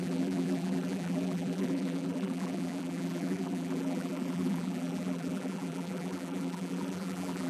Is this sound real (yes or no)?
no